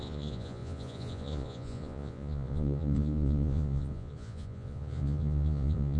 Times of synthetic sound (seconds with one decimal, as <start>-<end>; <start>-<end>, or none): 0.0-6.0